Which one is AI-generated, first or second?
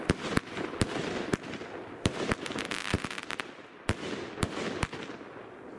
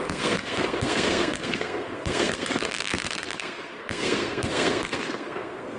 second